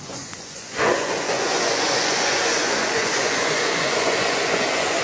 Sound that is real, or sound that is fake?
fake